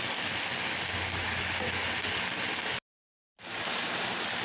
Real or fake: real